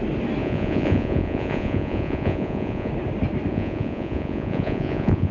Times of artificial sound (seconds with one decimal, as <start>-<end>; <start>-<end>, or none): 0.4-2.9; 3.5-5.3